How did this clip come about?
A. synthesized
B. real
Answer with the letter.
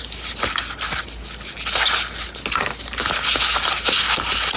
B